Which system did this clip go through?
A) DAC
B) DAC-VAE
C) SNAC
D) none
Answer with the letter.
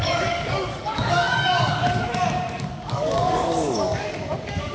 A